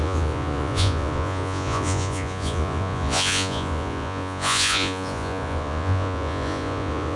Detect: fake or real fake